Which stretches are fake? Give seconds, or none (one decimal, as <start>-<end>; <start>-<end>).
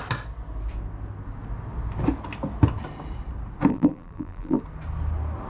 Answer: 3.7-4.6